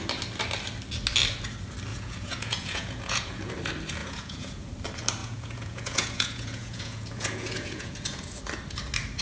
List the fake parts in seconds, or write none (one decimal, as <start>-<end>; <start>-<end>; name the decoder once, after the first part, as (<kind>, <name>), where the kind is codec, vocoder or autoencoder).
1.9-3.5 (vocoder, Vocos); 4.0-4.7; 5.2-8.4